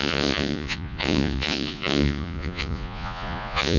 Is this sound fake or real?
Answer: fake